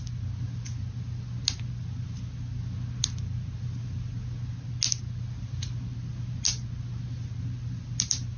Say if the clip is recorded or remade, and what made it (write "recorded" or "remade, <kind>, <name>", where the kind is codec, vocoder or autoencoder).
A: recorded